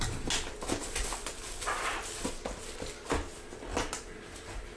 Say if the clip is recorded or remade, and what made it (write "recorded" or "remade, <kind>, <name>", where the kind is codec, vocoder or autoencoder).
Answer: recorded